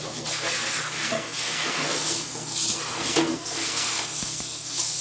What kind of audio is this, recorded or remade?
remade